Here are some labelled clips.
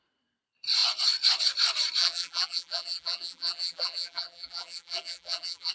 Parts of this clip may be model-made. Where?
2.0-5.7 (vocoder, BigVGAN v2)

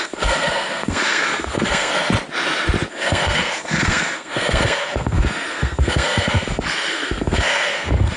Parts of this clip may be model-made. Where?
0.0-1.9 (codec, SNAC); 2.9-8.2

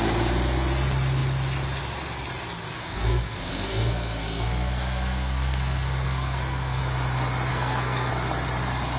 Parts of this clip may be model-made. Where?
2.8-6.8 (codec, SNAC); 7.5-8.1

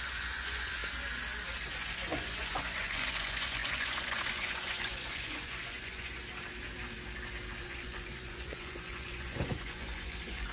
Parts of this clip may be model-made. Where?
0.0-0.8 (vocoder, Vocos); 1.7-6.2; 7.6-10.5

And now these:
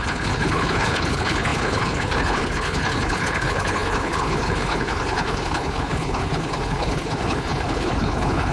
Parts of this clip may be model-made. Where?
0.0-8.5 (codec, HILCodec)